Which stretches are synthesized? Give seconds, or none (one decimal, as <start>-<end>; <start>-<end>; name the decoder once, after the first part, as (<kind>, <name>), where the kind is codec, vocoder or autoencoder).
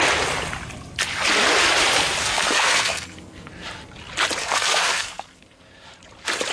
2.2-3.5 (codec, SNAC); 4.4-5.6